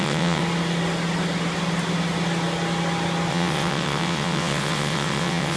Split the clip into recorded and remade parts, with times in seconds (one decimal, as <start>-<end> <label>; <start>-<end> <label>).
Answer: 0.0-0.4 remade; 0.4-3.3 recorded; 3.3-5.6 remade